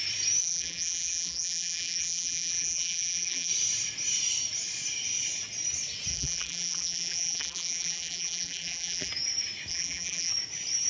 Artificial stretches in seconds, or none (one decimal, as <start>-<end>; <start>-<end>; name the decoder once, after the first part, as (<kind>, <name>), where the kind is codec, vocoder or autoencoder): 0.4-3.5 (vocoder, BigVGAN v2); 6.1-9.1; 9.7-10.3